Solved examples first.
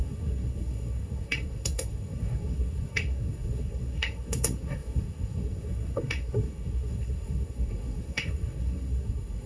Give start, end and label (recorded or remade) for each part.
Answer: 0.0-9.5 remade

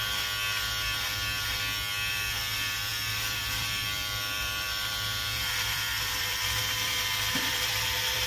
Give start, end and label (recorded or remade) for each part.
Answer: 0.0-2.1 recorded; 2.1-8.3 remade

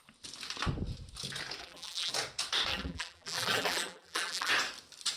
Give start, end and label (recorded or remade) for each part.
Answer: 0.0-1.6 recorded; 1.6-2.1 remade; 2.1-2.7 recorded; 2.7-4.5 remade; 4.5-5.2 recorded

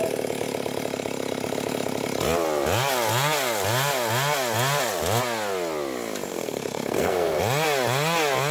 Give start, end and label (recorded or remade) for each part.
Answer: 0.0-6.3 recorded; 6.3-7.4 remade; 7.4-8.5 recorded